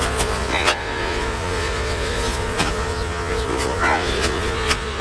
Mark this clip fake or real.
fake